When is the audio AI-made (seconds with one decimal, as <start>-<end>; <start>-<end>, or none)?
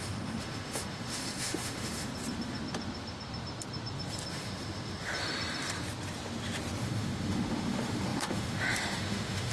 0.0-2.1; 4.3-5.1; 6.8-9.5